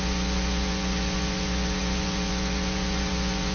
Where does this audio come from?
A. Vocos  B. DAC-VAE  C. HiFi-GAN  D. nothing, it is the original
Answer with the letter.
A